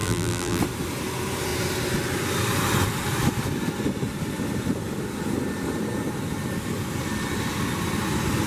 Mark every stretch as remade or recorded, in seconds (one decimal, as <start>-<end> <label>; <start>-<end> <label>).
0.0-0.6 remade; 0.6-8.5 recorded